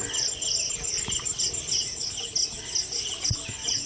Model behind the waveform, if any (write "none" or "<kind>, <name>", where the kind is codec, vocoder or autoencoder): none